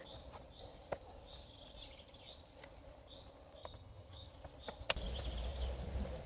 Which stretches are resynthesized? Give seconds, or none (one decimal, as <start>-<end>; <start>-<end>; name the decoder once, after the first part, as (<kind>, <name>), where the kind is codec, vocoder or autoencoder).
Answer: 3.6-4.3 (vocoder, HiFi-GAN)